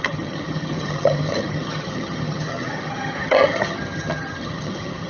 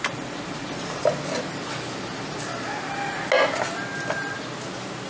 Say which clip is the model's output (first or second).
first